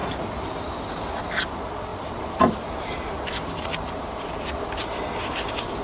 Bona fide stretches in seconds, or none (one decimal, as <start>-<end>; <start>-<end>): 0.0-1.9; 4.5-5.8